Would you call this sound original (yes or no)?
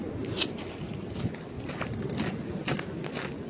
yes